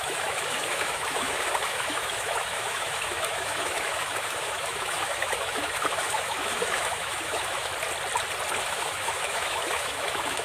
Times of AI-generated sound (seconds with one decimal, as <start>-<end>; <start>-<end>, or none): 0.0-7.7; 8.6-10.4